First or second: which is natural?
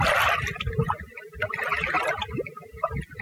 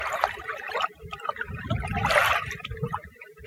first